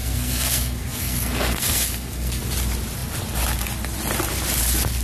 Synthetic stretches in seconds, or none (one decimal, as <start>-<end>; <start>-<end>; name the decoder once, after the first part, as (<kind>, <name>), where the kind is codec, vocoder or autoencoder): 0.0-2.4 (codec, SNAC)